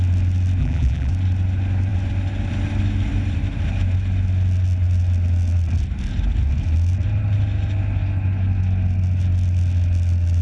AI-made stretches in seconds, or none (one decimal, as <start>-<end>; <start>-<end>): 0.6-1.1